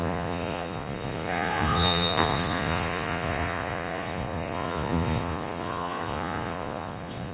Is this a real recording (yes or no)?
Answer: no